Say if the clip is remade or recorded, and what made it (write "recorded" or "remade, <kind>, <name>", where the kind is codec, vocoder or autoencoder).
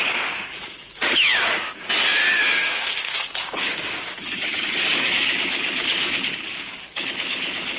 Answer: remade, codec, DAC